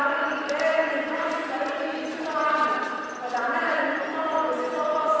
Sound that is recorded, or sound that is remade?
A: recorded